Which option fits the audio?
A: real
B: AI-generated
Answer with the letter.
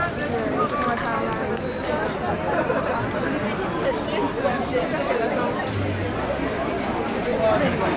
A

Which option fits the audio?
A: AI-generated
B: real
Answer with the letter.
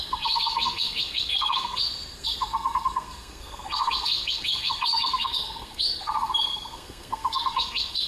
A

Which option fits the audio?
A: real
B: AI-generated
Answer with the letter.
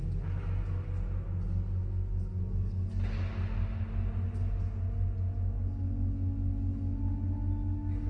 A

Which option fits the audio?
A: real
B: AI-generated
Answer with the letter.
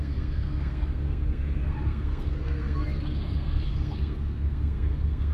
B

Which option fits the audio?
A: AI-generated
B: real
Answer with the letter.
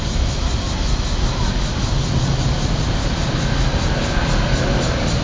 B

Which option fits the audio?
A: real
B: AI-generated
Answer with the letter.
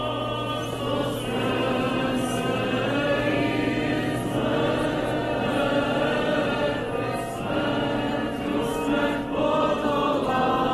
A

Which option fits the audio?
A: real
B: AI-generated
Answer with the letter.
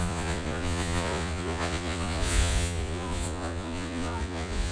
B